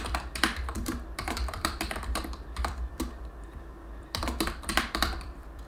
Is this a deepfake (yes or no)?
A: yes